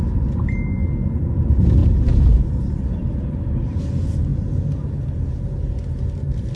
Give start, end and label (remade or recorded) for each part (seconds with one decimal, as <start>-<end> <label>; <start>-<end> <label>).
0.0-1.8 recorded; 1.8-3.1 remade; 3.1-6.6 recorded